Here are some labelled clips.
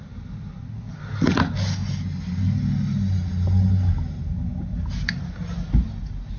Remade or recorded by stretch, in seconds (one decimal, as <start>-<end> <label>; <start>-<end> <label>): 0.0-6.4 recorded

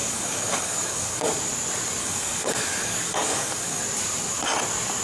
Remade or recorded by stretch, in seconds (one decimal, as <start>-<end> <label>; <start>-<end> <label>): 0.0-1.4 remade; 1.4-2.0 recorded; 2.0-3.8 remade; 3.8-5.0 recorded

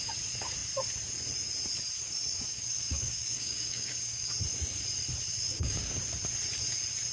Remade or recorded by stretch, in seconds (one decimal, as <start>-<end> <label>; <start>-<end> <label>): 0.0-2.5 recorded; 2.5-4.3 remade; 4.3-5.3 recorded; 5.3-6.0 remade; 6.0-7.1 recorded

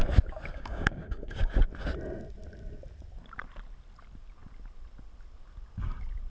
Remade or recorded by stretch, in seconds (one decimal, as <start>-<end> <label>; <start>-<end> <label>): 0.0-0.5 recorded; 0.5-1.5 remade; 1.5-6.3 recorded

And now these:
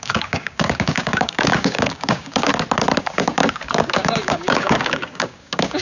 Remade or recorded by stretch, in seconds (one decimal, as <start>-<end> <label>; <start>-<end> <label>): 0.0-2.5 remade; 2.5-3.0 recorded; 3.0-5.8 remade